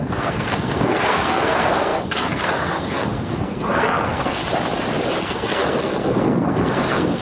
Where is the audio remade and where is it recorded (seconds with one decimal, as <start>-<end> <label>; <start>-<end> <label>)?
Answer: 0.0-4.4 remade; 4.4-5.2 recorded; 5.2-7.2 remade